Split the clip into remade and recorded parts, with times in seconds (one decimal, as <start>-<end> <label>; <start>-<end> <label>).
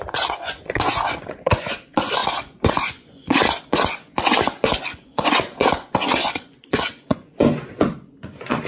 0.0-7.4 remade; 7.4-7.9 recorded; 7.9-8.7 remade